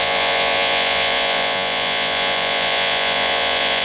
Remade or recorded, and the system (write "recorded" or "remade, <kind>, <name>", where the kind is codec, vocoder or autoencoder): remade, vocoder, Vocos